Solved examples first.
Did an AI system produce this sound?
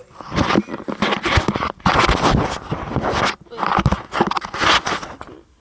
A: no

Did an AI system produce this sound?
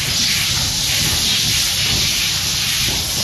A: no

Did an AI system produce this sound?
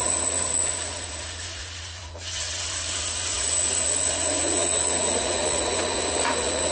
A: yes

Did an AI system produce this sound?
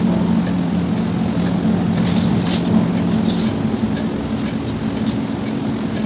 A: no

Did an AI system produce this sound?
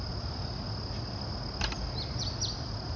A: no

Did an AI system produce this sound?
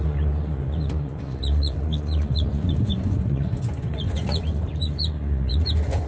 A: yes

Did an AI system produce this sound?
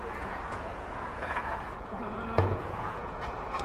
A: yes